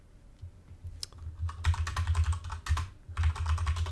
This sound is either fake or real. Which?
real